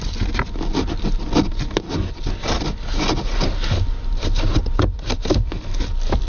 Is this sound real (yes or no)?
yes